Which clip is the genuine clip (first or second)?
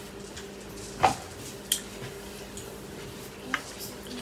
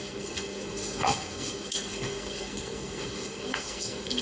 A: first